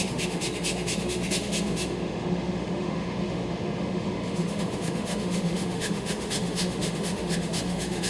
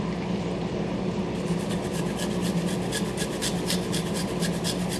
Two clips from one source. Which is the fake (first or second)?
first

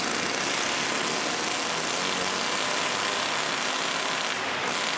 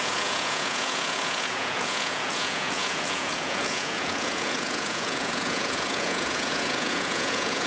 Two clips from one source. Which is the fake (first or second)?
second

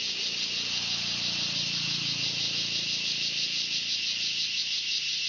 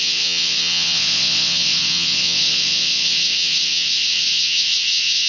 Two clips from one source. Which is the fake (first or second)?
second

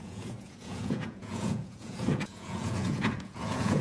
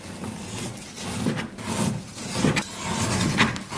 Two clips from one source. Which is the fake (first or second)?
first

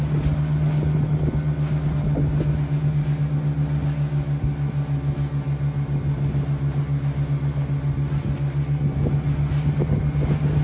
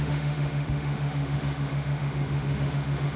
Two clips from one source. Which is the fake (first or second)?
second